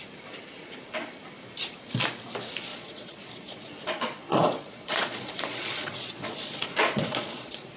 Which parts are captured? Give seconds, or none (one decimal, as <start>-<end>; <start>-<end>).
0.0-2.7